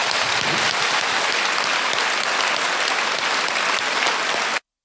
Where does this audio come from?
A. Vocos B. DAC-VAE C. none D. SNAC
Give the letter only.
C